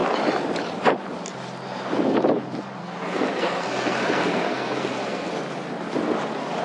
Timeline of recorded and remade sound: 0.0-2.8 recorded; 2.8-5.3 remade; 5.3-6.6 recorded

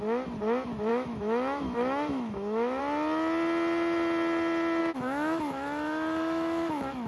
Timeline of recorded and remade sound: 0.0-0.9 recorded; 0.9-2.8 remade; 2.8-4.8 recorded; 4.8-7.1 remade

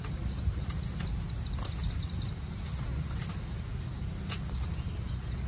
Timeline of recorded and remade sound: 0.0-5.5 recorded

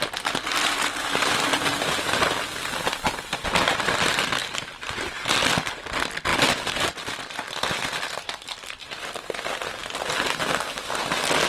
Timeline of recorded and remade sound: 0.0-4.4 recorded; 4.4-5.5 remade; 5.5-11.5 recorded

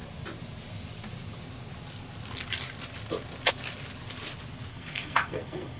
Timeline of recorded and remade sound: 0.0-4.7 recorded; 4.7-5.8 remade

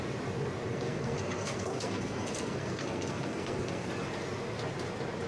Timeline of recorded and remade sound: 0.0-0.7 recorded; 0.7-3.9 remade; 3.9-5.3 recorded

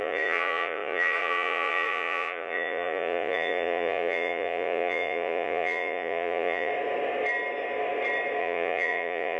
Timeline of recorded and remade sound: 0.0-6.7 remade; 6.7-8.4 recorded; 8.4-9.4 remade